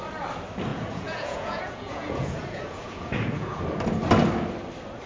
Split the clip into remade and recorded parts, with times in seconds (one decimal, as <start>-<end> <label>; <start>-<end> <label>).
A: 0.0-0.7 recorded; 0.7-3.6 remade; 3.6-5.1 recorded